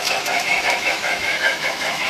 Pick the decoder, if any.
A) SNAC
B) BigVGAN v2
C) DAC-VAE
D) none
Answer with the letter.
C